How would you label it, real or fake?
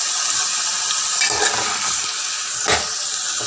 real